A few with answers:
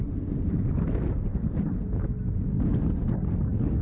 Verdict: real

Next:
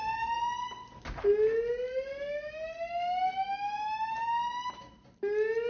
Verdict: real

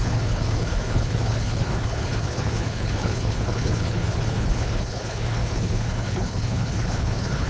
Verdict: fake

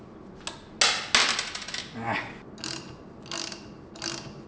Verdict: real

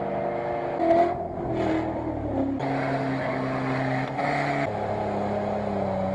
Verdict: real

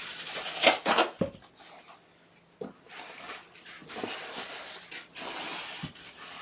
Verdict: real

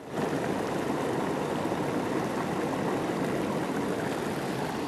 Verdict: real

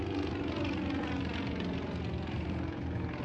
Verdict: real